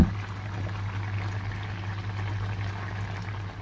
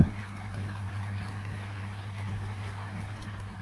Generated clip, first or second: second